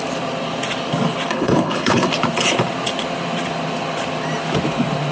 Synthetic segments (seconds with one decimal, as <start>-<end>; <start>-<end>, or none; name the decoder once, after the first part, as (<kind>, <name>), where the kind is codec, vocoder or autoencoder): 1.3-2.1 (codec, HILCodec)